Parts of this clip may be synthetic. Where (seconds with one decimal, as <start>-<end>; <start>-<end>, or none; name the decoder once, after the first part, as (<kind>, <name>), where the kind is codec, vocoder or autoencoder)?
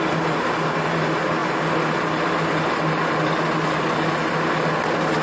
none